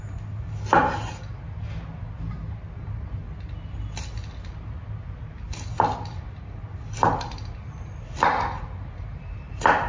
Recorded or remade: recorded